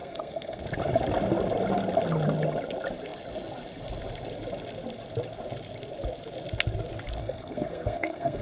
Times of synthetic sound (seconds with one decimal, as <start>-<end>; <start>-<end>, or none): 0.0-0.6; 7.2-8.4